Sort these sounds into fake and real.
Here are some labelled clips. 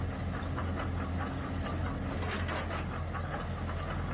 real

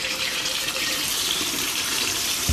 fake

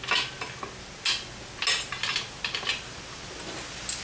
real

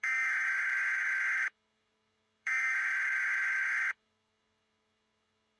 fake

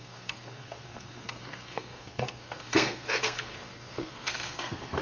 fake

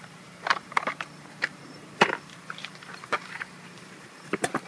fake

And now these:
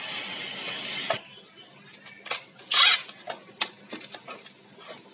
real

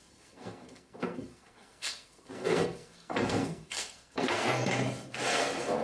fake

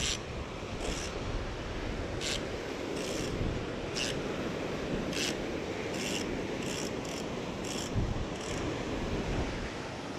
real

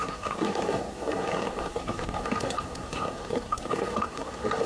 fake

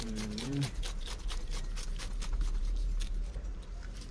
fake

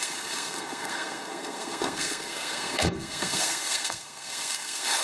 fake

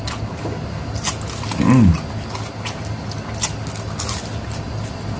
real